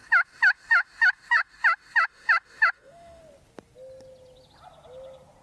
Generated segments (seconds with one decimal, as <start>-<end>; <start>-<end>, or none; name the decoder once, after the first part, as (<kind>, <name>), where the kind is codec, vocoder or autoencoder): 0.0-3.2 (autoencoder, DAC-VAE)